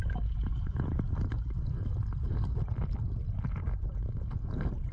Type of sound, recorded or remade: recorded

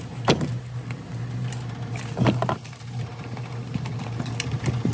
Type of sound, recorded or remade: recorded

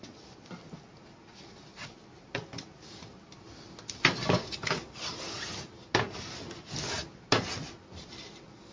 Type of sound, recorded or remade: recorded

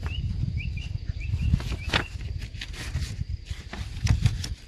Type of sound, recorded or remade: recorded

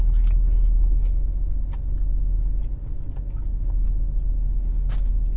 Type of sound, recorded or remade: recorded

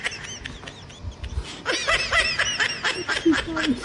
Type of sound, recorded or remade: recorded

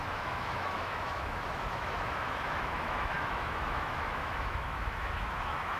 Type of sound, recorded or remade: remade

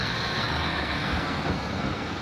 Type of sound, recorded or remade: remade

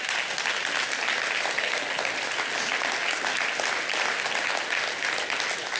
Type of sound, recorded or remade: recorded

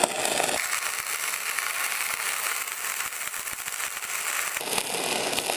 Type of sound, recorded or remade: recorded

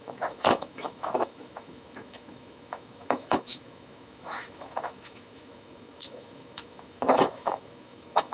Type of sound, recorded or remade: remade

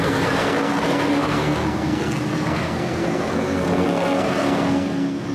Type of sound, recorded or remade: remade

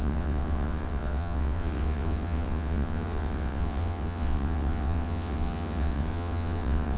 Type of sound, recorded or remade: remade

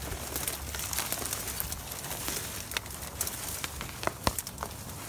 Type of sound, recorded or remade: recorded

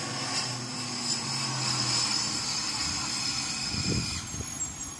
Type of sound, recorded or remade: recorded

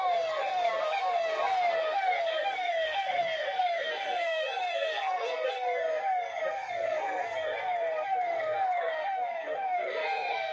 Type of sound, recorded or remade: remade